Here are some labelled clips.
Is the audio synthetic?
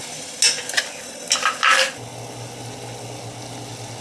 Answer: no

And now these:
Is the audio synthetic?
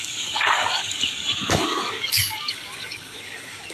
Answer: yes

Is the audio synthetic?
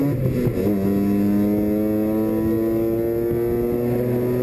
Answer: no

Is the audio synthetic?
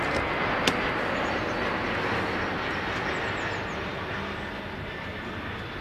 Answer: no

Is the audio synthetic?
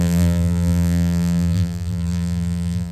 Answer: yes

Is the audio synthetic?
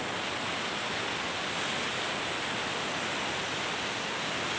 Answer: no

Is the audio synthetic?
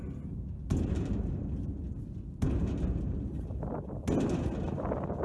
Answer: no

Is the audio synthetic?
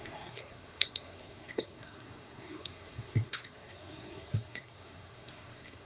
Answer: yes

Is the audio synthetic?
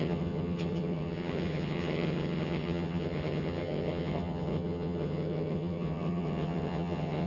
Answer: yes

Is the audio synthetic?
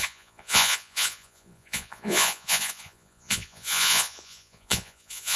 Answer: yes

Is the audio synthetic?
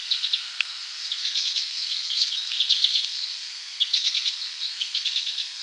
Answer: yes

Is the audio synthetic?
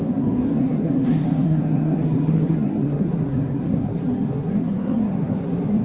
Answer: yes